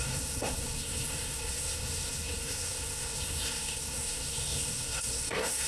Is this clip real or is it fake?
fake